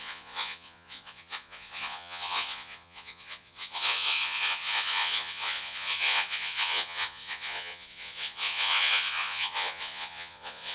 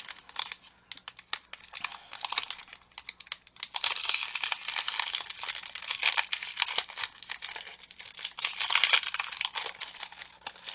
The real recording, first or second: second